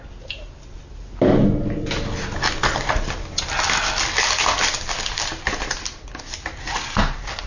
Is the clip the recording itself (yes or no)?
yes